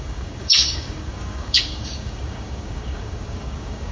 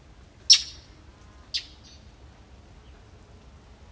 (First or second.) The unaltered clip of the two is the second